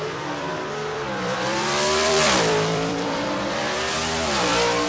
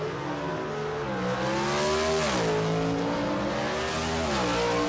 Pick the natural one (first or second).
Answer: second